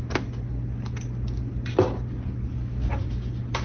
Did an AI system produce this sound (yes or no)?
no